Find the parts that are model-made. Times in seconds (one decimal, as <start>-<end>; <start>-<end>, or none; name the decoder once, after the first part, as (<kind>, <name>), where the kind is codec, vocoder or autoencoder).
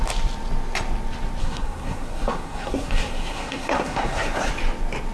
1.4-4.5 (codec, SNAC)